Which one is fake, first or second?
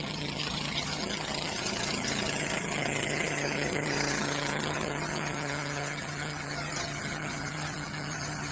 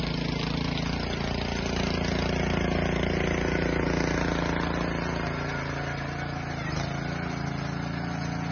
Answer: first